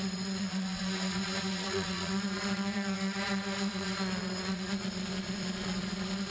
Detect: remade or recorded remade